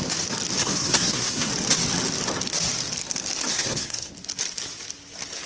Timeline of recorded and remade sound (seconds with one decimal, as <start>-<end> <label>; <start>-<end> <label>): 0.0-0.6 recorded; 0.6-1.5 remade; 1.5-3.5 recorded; 3.5-4.1 remade; 4.1-5.5 recorded